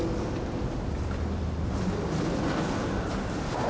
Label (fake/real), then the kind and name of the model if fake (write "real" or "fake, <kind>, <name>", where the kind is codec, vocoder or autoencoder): real